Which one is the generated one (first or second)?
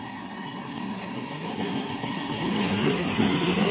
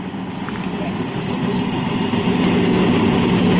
first